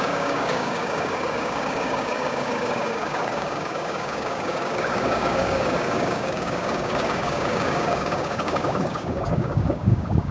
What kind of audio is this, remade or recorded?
remade